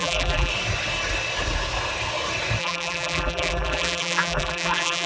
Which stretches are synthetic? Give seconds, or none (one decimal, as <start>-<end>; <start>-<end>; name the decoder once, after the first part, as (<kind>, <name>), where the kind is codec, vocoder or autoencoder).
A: 0.0-0.5 (vocoder, BigVGAN v2); 2.6-5.1